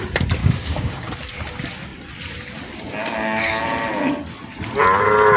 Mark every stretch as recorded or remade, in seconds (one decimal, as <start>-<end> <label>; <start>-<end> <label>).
0.0-0.4 recorded; 0.4-1.1 remade; 1.1-5.4 recorded